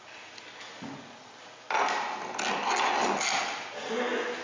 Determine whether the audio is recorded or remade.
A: recorded